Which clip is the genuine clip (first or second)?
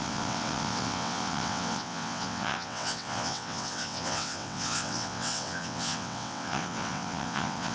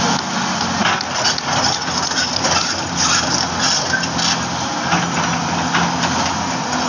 second